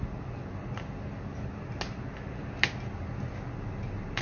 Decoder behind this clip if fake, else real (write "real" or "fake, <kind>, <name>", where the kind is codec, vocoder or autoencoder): real